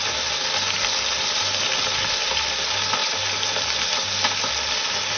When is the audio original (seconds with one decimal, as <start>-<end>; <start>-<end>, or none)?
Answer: 0.0-5.2